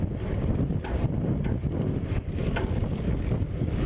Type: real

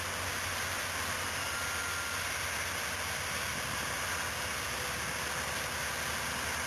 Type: real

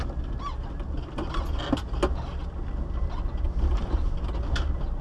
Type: real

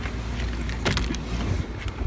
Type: real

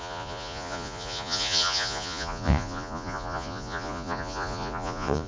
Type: fake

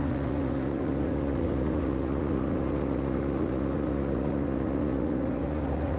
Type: fake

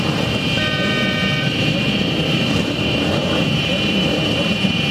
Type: fake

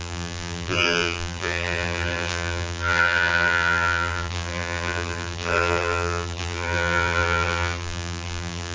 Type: fake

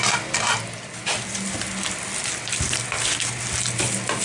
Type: real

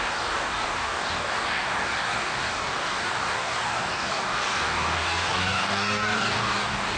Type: fake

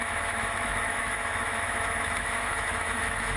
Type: fake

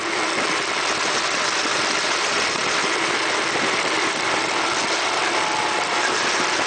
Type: real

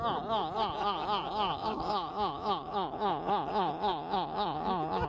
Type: real